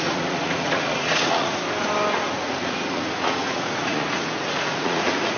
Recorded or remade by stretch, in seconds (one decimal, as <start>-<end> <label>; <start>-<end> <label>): 0.0-1.6 remade; 1.6-2.2 recorded; 2.2-5.4 remade